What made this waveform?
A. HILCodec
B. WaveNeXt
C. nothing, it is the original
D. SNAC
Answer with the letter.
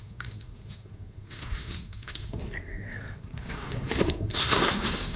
D